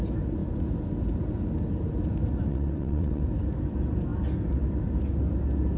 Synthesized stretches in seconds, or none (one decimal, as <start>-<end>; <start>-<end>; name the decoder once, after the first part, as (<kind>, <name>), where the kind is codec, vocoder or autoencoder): 2.5-3.2 (vocoder, WaveNeXt)